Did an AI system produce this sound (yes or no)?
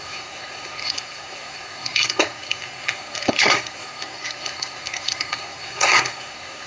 yes